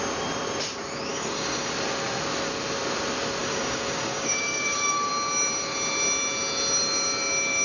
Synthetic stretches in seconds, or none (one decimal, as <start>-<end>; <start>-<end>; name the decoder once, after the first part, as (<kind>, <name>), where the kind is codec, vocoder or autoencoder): 1.1-1.7 (codec, DAC); 3.4-5.1